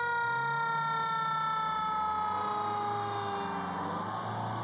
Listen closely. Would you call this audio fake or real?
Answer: real